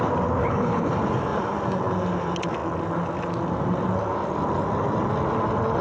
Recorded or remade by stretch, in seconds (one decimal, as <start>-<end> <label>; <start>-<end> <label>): 0.0-0.4 recorded; 0.4-0.9 remade; 0.9-5.8 recorded